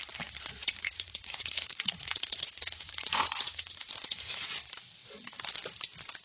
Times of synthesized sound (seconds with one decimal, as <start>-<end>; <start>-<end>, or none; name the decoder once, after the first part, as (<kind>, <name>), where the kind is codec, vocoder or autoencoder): 0.6-4.3 (vocoder, Vocos)